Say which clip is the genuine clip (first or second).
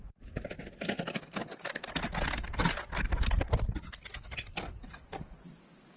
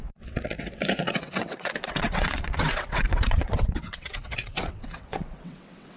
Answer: first